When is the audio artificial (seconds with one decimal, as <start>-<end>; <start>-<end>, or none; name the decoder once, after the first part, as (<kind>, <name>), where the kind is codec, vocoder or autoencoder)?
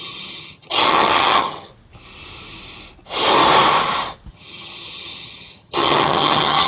0.0-1.7 (vocoder, HiFi-GAN); 4.3-6.7